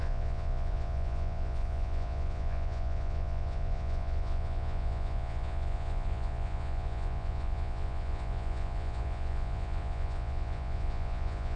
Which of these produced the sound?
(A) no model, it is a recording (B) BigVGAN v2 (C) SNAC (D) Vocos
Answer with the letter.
D